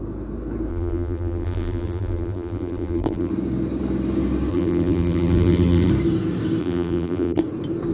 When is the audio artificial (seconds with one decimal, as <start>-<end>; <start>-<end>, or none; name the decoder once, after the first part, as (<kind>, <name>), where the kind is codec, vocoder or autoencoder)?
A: 0.7-3.3 (vocoder, BigVGAN v2); 4.5-5.9; 6.6-7.4